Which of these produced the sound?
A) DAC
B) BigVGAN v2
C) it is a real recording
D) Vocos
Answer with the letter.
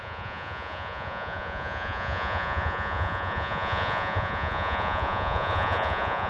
D